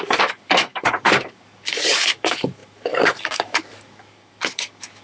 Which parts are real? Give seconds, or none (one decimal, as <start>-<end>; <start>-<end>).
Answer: none